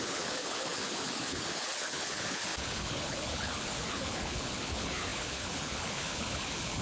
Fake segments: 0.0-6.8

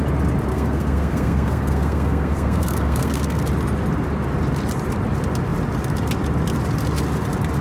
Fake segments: 0.5-3.4

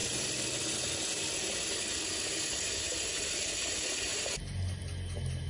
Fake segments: 0.0-4.1

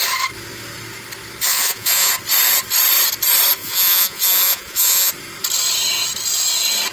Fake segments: 1.5-2.1; 3.6-5.1

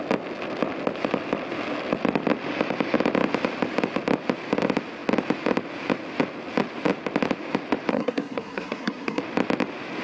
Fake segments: 7.9-9.2

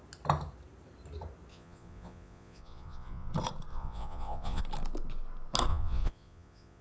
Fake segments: 1.5-3.3; 3.7-4.6; 5.7-6.8